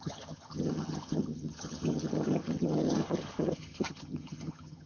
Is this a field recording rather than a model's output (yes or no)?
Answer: no